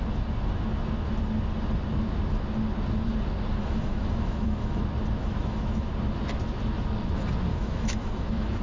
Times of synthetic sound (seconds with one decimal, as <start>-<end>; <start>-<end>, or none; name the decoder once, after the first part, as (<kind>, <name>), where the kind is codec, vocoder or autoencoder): 3.6-4.8 (autoencoder, DAC-VAE); 5.2-5.9; 7.5-8.6